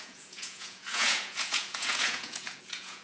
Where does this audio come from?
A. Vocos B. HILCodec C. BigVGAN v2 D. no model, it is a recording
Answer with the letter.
A